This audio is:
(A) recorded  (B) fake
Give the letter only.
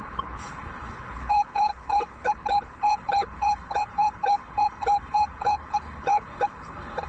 B